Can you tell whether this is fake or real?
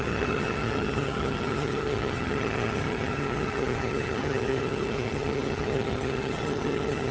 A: fake